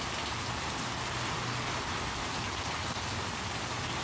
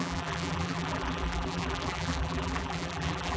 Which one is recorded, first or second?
first